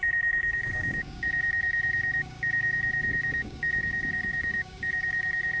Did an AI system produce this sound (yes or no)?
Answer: yes